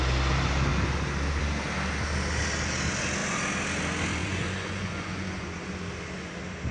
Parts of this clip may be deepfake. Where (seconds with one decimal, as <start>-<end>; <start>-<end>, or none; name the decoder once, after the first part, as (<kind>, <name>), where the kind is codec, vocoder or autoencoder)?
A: 4.2-5.6 (vocoder, Vocos)